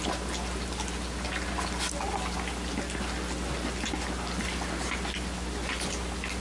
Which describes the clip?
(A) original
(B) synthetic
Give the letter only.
A